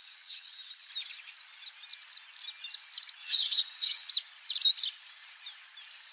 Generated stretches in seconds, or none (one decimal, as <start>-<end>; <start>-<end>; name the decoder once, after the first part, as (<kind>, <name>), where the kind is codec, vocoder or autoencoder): 0.0-0.9 (vocoder, WaveNeXt); 3.2-4.1